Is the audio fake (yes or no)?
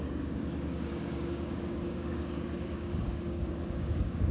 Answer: yes